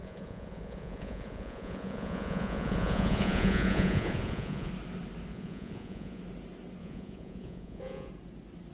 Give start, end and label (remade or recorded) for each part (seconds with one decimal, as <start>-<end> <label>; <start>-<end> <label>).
0.0-4.7 remade; 4.7-5.3 recorded; 5.3-6.2 remade; 6.2-6.8 recorded; 6.8-8.1 remade; 8.1-8.7 recorded